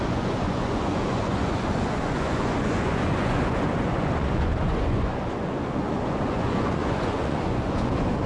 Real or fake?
fake